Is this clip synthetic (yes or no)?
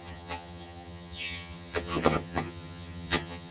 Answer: yes